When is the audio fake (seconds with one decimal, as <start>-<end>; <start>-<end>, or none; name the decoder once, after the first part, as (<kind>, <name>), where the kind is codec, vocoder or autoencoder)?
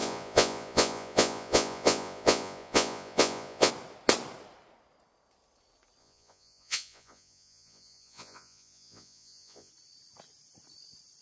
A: 0.0-3.7 (vocoder, Vocos); 6.0-9.7